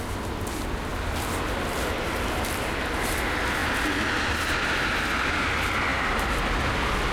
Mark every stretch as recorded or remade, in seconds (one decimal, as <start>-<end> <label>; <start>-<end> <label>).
0.0-7.1 recorded